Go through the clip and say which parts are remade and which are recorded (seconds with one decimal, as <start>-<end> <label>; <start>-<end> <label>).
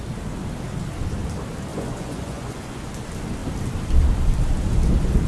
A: 0.0-1.7 recorded; 1.7-2.9 remade; 2.9-5.3 recorded